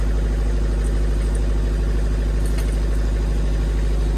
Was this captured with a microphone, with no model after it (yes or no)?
yes